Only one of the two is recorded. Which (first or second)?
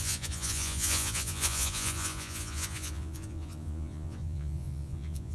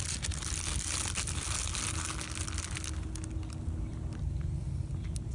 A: second